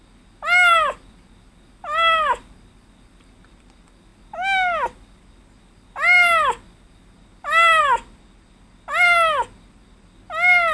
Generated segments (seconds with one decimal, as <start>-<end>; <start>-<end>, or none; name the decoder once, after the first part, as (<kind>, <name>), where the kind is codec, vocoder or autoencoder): none